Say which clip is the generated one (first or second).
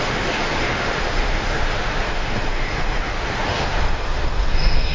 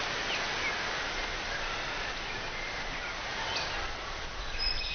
first